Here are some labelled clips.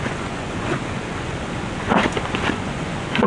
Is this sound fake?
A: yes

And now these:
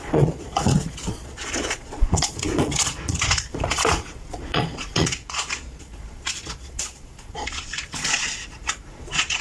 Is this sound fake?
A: yes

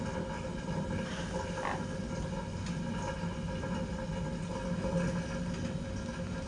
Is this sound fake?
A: no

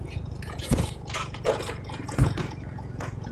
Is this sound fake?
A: yes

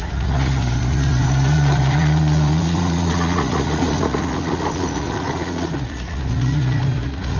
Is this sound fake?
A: yes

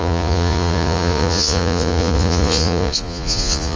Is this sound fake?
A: yes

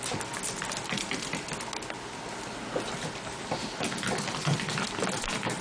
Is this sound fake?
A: no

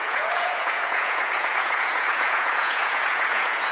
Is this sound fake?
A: yes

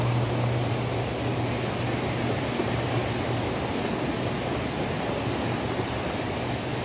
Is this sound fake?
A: no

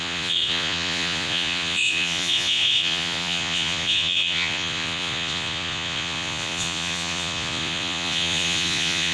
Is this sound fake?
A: yes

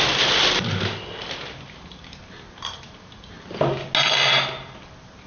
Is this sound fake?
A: no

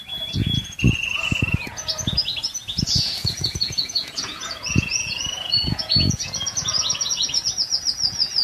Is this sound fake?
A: yes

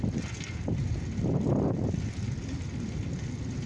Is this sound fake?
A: no